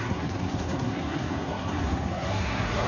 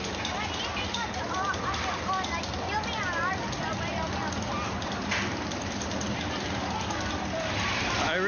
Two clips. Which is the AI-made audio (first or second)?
first